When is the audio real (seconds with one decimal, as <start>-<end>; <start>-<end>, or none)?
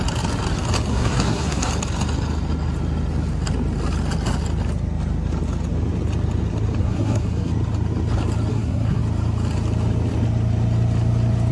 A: 0.0-0.9; 1.7-6.8; 7.5-8.5; 9.0-11.5